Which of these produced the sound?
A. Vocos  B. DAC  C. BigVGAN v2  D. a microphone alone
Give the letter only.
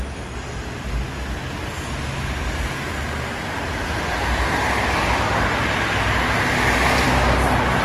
D